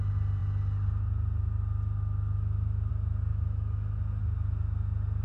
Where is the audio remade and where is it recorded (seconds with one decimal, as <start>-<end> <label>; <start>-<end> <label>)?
0.0-3.3 recorded; 3.3-4.0 remade; 4.0-5.2 recorded